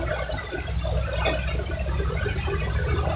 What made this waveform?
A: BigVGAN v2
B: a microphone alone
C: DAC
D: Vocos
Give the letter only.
B